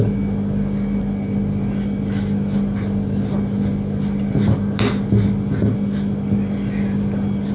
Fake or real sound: real